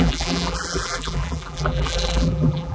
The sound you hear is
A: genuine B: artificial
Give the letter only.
B